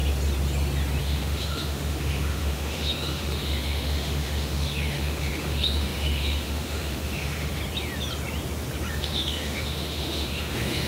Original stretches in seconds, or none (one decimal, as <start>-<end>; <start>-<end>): 0.0-1.0; 7.6-8.9

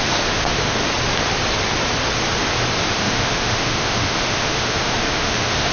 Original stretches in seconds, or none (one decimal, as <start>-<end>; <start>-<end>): 0.8-2.9

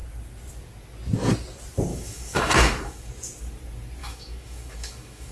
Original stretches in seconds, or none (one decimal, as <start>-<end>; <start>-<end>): 0.0-1.9; 3.1-4.0

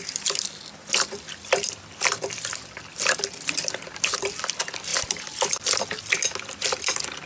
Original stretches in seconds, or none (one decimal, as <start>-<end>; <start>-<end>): 0.0-7.3

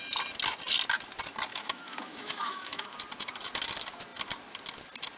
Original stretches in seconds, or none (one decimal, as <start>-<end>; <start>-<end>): 0.0-1.5; 3.0-5.2

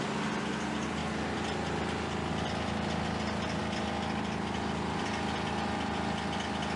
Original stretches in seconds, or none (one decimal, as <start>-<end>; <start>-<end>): 0.0-6.8